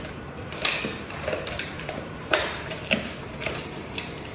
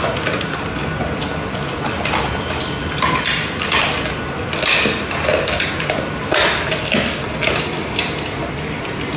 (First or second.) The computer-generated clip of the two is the first